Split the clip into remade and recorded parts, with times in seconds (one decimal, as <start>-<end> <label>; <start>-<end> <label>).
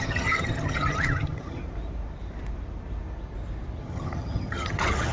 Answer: 0.0-1.6 remade; 1.6-3.8 recorded; 3.8-5.1 remade